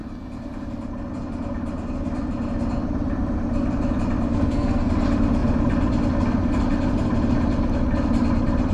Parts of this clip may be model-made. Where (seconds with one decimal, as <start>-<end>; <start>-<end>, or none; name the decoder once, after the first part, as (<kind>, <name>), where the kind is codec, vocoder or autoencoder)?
4.3-4.9 (codec, SNAC)